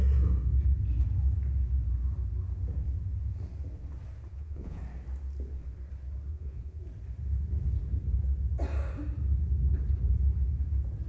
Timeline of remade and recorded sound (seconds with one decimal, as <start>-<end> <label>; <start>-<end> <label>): 0.0-4.3 recorded; 4.3-4.8 remade; 4.8-6.3 recorded; 6.3-6.8 remade; 6.8-11.1 recorded